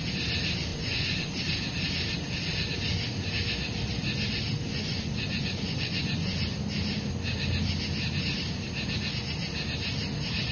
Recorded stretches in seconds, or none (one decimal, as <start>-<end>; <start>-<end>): 0.0-0.7; 1.4-4.7; 6.3-10.5